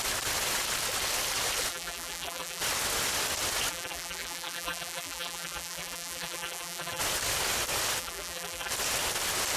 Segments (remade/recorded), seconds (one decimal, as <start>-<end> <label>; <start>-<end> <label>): 0.0-1.7 recorded; 1.7-2.6 remade; 2.6-3.7 recorded; 3.7-7.0 remade; 7.0-8.0 recorded; 8.0-8.7 remade; 8.7-9.6 recorded